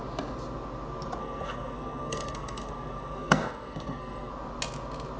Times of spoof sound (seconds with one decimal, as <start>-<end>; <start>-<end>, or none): 1.2-4.3